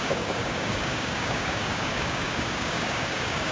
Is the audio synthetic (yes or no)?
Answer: yes